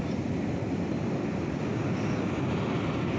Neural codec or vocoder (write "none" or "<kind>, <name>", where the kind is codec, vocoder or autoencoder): none